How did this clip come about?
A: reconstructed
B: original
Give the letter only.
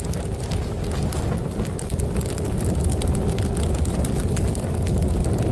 B